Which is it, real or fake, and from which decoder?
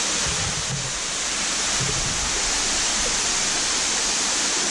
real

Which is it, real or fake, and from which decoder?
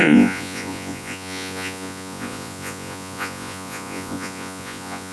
fake, vocoder, Vocos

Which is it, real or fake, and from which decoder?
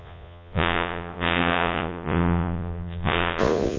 fake, vocoder, Vocos